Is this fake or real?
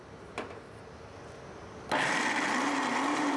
real